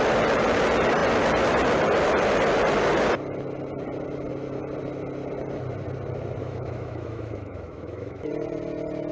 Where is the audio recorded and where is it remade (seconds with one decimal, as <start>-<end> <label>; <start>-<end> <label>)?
0.0-6.4 recorded; 6.4-8.3 remade; 8.3-9.1 recorded